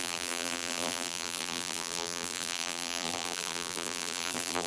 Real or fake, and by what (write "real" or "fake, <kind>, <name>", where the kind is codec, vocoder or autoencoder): fake, vocoder, BigVGAN v2